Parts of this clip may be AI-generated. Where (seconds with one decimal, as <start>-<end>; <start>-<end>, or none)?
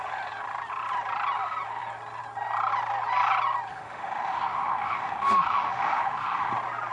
3.7-6.5